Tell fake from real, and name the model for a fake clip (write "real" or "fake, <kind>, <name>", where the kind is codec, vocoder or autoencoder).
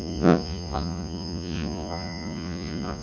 fake, vocoder, Vocos